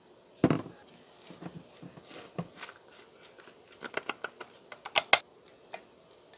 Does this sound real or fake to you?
real